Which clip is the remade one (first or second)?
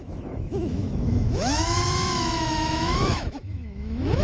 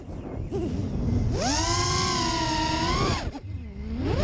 first